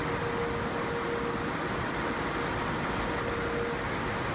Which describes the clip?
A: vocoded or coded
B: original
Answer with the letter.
B